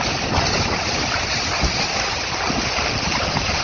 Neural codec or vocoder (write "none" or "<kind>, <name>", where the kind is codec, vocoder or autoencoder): none